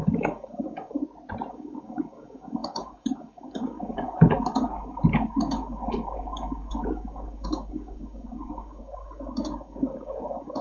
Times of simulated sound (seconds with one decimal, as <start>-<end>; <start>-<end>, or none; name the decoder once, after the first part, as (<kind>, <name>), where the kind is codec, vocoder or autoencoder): 0.0-1.0 (codec, DAC); 1.5-10.6